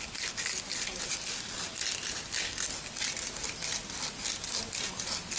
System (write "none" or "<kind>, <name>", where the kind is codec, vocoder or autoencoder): none